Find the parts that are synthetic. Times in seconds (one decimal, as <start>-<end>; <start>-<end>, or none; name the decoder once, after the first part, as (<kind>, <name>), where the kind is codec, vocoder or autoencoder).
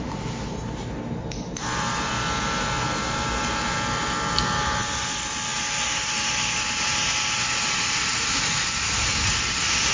0.0-9.9 (vocoder, BigVGAN v2)